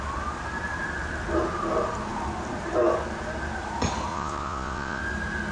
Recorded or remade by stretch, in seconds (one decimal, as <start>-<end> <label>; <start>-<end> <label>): 0.0-4.1 recorded; 4.1-5.0 remade; 5.0-5.5 recorded